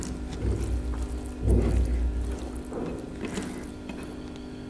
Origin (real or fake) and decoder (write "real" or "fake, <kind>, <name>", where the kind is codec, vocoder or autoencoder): real